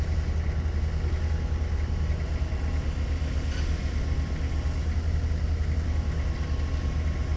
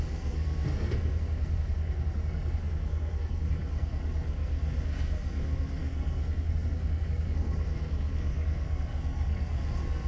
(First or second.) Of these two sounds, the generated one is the second